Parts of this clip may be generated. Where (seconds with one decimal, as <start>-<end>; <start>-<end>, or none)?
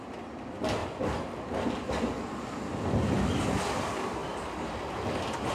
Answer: none